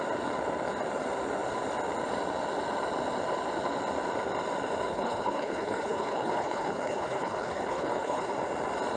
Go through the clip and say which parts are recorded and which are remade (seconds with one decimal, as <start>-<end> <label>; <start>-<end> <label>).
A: 0.0-4.9 recorded; 4.9-8.3 remade; 8.3-9.0 recorded